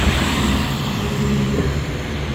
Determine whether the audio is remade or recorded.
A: remade